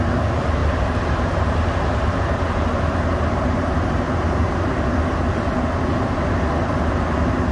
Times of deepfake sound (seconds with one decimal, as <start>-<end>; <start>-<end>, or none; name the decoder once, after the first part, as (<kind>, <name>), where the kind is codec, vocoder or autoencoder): 0.6-4.8 (vocoder, BigVGAN v2)